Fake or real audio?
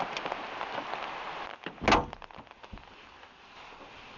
real